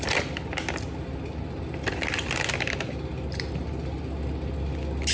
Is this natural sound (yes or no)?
yes